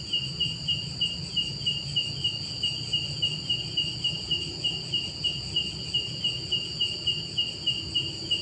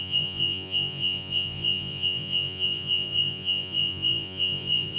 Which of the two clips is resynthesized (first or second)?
second